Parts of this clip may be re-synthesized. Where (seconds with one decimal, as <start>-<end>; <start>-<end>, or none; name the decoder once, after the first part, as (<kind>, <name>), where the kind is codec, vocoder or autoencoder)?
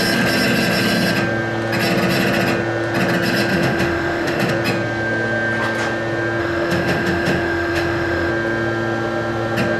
3.5-4.5 (autoencoder, DAC-VAE); 6.4-8.3